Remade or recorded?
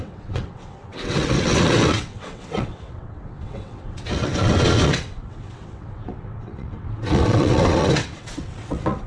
remade